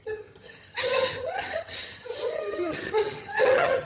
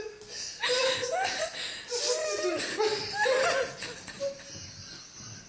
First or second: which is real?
second